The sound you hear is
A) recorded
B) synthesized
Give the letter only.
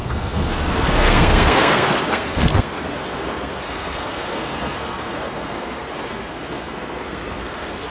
B